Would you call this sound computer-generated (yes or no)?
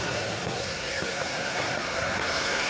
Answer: yes